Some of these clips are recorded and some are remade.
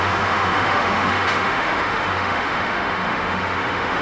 remade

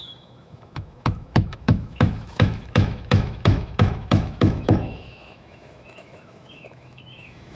remade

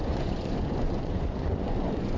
remade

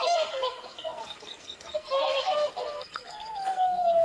remade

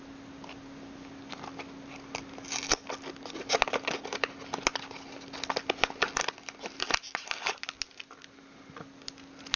recorded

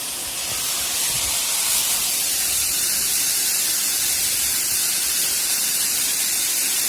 recorded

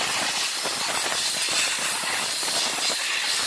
recorded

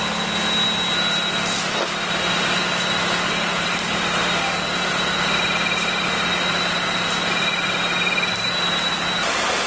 recorded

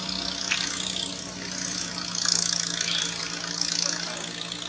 recorded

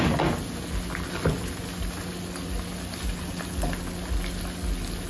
recorded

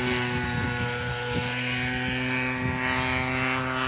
recorded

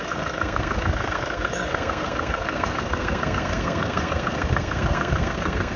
remade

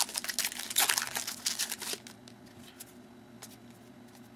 recorded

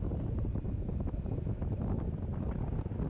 recorded